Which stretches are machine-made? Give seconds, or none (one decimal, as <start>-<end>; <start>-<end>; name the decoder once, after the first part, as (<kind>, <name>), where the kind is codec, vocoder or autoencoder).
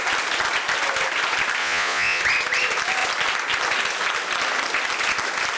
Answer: 1.6-2.2 (vocoder, Vocos)